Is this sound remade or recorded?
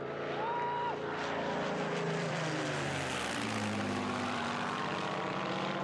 remade